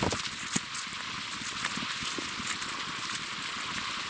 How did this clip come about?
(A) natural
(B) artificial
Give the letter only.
A